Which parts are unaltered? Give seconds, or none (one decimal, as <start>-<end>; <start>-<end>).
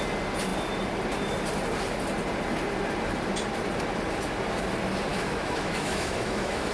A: 0.0-5.1